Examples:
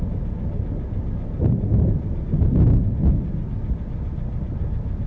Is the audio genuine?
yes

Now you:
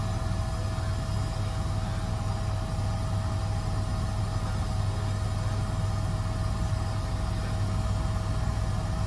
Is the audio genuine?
yes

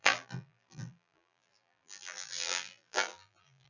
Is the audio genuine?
no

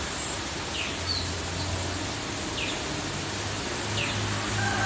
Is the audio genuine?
yes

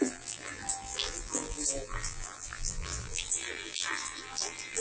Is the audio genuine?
no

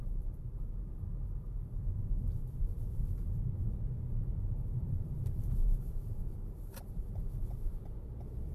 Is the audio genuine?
no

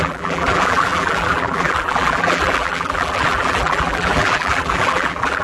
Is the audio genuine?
no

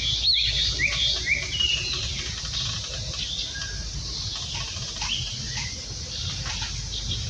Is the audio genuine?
yes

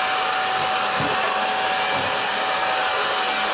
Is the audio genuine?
yes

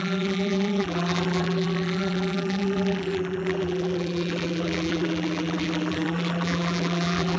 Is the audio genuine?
no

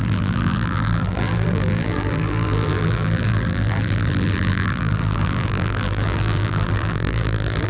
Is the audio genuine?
no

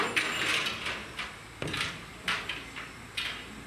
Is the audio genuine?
no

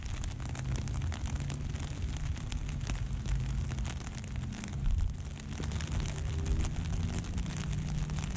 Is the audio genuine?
yes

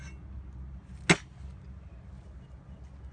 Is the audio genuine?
yes